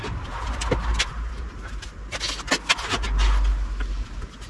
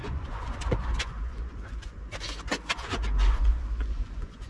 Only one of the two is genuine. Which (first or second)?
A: first